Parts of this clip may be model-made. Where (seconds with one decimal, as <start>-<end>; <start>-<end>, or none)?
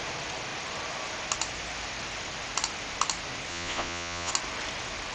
3.5-4.3